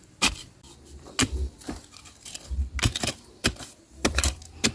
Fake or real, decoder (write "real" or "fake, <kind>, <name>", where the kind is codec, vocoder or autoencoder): real